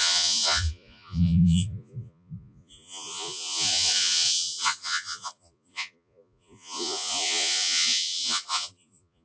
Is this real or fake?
fake